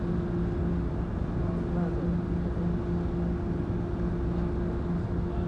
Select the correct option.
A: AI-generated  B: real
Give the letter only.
B